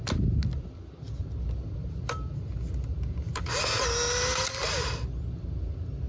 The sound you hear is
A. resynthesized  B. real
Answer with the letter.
B